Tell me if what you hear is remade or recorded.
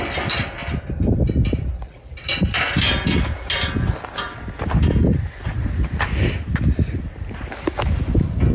recorded